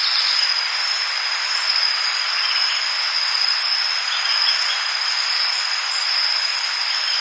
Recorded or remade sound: recorded